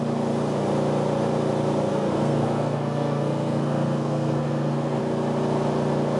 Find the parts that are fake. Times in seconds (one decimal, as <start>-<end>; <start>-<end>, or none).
1.9-5.0